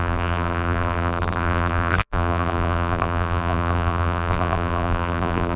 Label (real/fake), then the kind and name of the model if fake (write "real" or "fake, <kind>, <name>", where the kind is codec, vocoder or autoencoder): fake, vocoder, BigVGAN v2